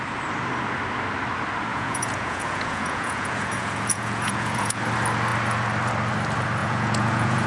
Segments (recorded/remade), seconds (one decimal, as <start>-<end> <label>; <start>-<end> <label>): 0.0-1.7 recorded; 1.7-4.8 remade; 4.8-6.6 recorded; 6.6-7.5 remade